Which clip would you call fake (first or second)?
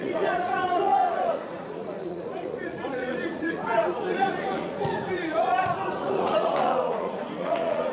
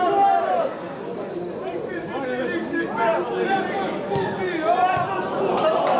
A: first